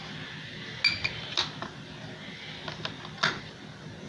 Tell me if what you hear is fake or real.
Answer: real